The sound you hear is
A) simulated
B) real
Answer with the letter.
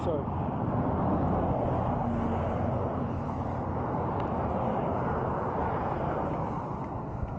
B